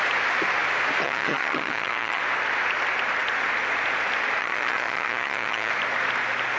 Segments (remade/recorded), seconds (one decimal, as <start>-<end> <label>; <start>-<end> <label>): 0.0-1.0 recorded; 1.0-2.2 remade; 2.2-4.4 recorded; 4.4-5.7 remade; 5.7-6.6 recorded